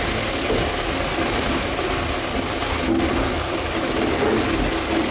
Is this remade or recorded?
recorded